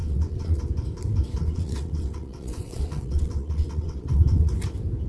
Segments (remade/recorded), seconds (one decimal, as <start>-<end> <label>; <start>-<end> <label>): 0.0-0.6 remade; 0.6-1.4 recorded; 1.4-4.5 remade; 4.5-5.1 recorded